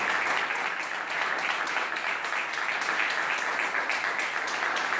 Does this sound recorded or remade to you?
recorded